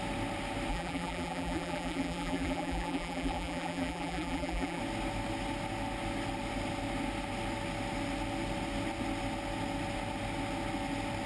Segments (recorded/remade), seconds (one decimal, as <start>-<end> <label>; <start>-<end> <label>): 0.0-0.7 recorded; 0.7-4.8 remade; 4.8-11.3 recorded